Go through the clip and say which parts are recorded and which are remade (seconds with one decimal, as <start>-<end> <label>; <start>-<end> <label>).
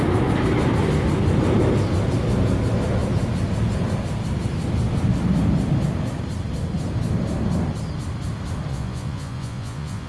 0.0-8.7 recorded; 8.7-10.1 remade